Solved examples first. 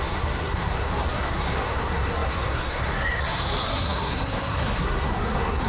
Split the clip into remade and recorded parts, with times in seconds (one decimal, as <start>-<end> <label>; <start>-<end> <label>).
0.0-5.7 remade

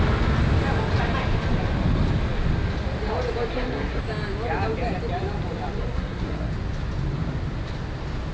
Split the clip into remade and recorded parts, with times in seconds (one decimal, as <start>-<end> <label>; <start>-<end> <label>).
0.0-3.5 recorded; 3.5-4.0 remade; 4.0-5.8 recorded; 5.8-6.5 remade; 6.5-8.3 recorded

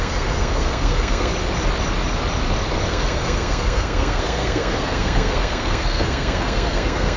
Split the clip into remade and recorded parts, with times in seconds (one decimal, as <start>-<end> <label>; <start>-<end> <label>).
0.0-1.3 remade; 1.3-2.9 recorded; 2.9-7.2 remade

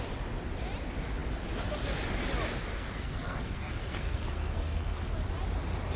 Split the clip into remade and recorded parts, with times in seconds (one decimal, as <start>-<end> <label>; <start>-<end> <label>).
0.0-2.7 recorded; 2.7-5.0 remade; 5.0-6.0 recorded

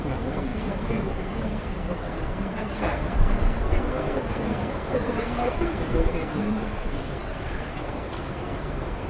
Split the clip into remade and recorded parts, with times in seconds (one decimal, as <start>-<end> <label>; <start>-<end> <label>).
0.0-9.1 remade